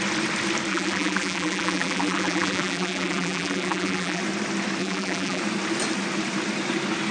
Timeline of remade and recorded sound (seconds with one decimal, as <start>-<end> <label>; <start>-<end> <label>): 0.0-0.7 recorded; 0.7-4.2 remade; 4.2-4.8 recorded; 4.8-5.4 remade; 5.4-7.1 recorded